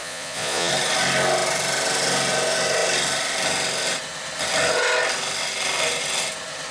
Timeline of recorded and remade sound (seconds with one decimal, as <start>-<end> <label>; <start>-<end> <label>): 0.0-0.7 remade; 0.7-6.7 recorded